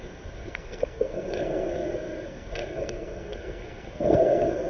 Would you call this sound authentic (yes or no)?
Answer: no